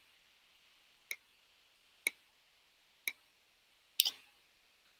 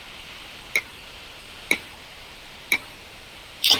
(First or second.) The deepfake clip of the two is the second